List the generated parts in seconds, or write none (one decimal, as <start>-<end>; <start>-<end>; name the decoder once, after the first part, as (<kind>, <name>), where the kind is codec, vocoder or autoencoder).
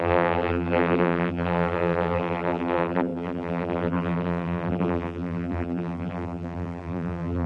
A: 0.0-7.5 (vocoder, BigVGAN v2)